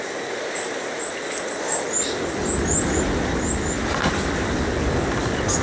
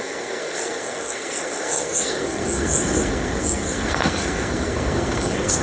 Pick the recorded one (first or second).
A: first